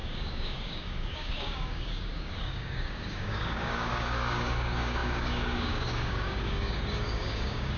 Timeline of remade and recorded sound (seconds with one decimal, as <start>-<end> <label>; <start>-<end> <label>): 0.0-7.8 remade